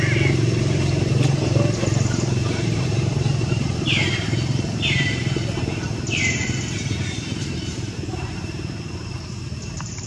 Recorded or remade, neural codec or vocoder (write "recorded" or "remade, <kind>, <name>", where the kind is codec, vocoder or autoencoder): remade, vocoder, BigVGAN v2